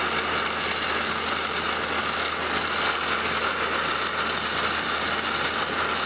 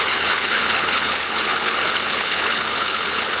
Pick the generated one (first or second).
second